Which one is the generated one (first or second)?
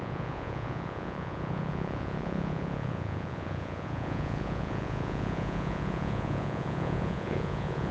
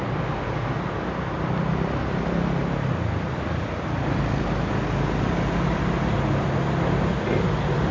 first